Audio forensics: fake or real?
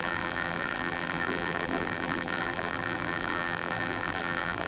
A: fake